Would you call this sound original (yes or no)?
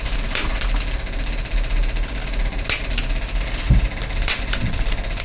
yes